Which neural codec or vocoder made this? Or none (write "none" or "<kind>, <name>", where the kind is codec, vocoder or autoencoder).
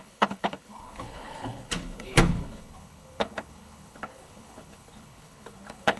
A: codec, HILCodec